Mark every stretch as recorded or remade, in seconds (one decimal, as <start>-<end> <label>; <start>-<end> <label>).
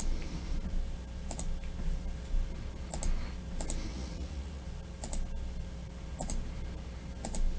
0.0-3.9 recorded; 3.9-4.6 remade; 4.6-7.6 recorded